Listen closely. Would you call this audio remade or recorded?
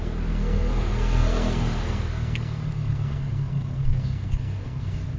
remade